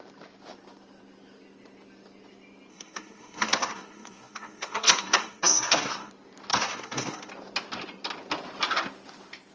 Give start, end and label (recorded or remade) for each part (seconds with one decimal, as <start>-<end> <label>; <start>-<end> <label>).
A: 0.0-2.7 recorded; 2.7-6.1 remade; 6.1-6.5 recorded; 6.5-7.3 remade; 7.3-9.5 recorded